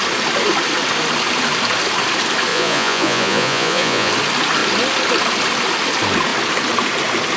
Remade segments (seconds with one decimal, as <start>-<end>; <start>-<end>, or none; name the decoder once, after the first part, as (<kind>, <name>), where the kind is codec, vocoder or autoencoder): 2.5-4.1 (vocoder, Vocos)

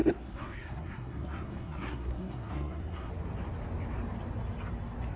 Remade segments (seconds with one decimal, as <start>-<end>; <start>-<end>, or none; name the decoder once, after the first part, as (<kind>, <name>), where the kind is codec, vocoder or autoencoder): 0.0-3.1 (codec, SNAC)

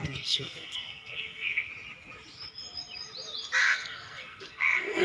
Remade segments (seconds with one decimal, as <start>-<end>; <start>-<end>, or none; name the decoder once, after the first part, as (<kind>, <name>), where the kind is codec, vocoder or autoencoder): 0.0-1.7 (codec, SNAC); 3.6-5.0

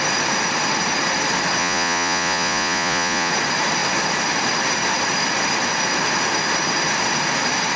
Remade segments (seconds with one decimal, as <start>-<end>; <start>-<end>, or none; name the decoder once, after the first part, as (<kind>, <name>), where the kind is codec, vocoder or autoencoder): 1.6-3.3 (vocoder, Vocos)

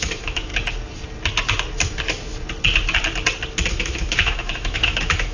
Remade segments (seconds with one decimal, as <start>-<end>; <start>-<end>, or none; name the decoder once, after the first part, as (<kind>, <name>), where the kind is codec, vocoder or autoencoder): 0.0-0.5 (autoencoder, DAC-VAE); 3.7-5.3